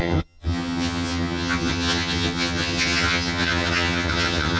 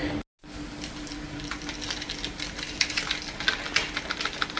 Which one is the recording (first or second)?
second